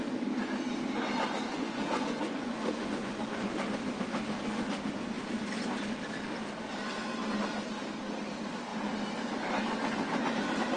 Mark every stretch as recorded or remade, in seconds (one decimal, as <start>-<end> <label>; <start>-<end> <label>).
0.0-1.5 recorded; 1.5-3.5 remade; 3.5-10.8 recorded